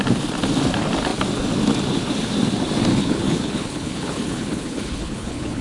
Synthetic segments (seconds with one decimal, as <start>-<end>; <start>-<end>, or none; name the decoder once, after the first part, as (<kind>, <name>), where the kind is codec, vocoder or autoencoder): 2.9-5.6 (codec, HILCodec)